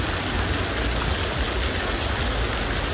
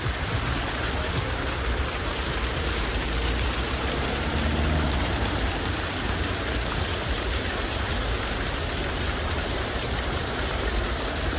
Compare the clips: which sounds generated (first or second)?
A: second